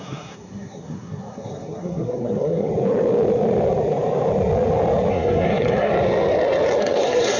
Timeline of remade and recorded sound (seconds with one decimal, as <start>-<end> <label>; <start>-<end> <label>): 0.0-2.7 remade; 2.7-5.1 recorded; 5.1-5.9 remade; 5.9-6.8 recorded; 6.8-7.4 remade